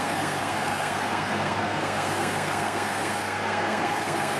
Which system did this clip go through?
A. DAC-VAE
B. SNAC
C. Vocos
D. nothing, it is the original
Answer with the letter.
B